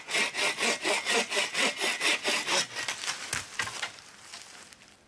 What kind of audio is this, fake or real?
real